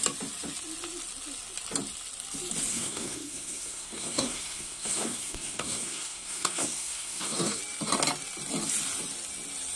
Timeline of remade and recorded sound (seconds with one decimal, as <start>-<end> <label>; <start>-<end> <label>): 0.0-2.7 recorded; 2.7-7.6 remade; 7.6-9.8 recorded